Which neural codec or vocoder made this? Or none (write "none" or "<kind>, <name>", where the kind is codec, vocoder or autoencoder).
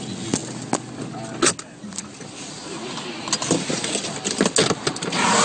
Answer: none